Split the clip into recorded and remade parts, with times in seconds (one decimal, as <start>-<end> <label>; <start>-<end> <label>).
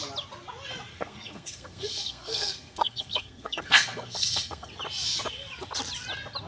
0.0-0.9 recorded; 0.9-4.7 remade; 4.7-6.5 recorded